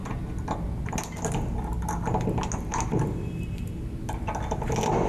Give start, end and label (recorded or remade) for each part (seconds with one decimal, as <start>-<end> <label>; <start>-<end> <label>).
0.0-5.1 recorded